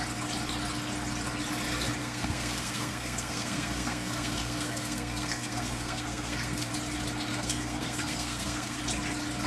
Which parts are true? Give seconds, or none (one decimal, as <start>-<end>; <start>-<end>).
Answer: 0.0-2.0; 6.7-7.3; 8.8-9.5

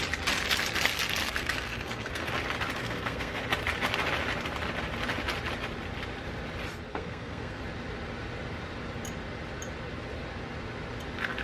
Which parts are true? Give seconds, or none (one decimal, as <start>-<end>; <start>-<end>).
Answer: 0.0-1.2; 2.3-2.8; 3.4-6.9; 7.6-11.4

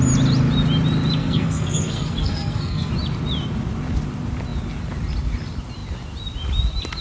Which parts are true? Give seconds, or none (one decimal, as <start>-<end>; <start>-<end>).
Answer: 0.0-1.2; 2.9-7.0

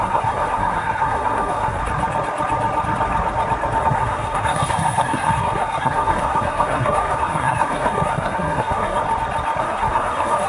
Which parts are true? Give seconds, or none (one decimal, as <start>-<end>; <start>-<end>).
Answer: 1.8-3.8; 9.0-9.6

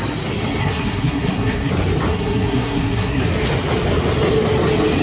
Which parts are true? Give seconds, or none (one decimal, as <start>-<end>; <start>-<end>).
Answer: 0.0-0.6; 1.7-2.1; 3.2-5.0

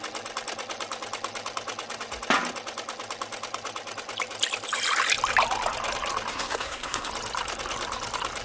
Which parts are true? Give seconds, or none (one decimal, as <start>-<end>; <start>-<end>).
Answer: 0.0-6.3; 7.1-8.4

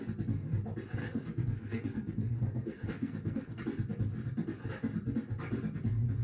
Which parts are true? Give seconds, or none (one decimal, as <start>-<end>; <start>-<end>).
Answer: 0.0-1.0; 3.6-6.2

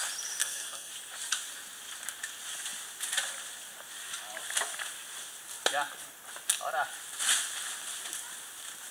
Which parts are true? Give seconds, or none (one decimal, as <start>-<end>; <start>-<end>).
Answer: 0.0-0.4; 0.9-8.9